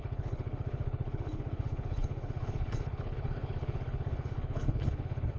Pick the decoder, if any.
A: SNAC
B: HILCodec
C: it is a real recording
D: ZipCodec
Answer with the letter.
B